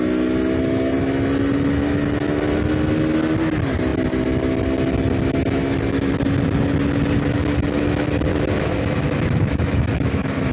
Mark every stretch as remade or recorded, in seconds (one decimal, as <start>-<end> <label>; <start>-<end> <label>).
0.0-8.3 recorded; 8.3-10.5 remade